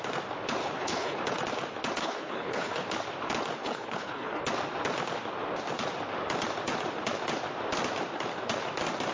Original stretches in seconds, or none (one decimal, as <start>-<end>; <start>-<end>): 0.0-0.6; 1.2-2.0; 2.8-3.6; 4.4-9.1